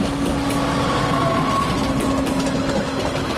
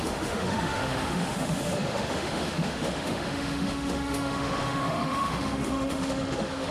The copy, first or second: second